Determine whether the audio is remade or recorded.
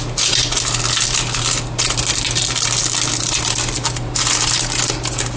recorded